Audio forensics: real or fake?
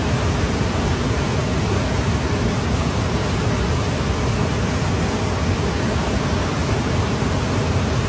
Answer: real